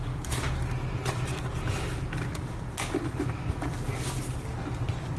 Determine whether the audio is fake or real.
real